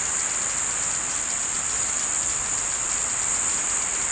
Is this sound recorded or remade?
recorded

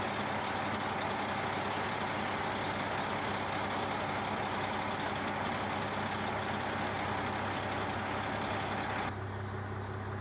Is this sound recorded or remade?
recorded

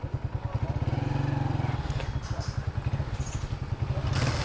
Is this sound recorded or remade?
recorded